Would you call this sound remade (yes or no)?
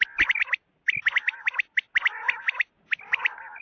no